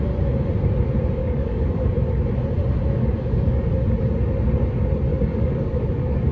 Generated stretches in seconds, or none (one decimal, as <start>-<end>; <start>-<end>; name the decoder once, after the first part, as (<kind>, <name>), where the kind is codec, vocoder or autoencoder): 1.2-1.9 (codec, DAC); 3.0-3.7; 5.1-6.3